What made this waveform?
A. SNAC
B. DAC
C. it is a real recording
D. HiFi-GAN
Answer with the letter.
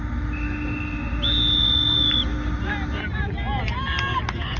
C